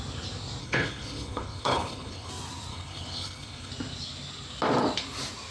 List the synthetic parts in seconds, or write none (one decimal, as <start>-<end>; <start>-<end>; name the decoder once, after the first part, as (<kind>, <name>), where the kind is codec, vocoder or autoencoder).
0.6-2.3 (codec, HILCodec); 2.7-3.7